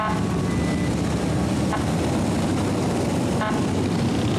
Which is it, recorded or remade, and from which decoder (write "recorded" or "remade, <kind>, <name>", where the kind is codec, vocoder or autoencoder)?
recorded